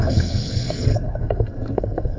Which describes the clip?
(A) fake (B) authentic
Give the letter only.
A